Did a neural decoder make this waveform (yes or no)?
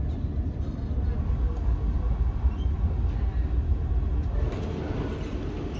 no